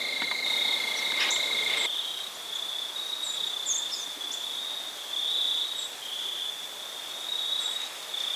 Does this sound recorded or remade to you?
recorded